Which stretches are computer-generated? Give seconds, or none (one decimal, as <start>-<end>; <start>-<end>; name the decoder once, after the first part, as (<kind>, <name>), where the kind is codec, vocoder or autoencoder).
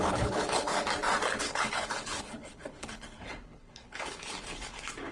0.0-0.7 (codec, HILCodec); 1.4-5.1